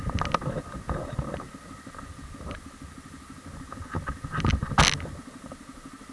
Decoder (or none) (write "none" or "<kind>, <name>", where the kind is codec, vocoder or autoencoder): none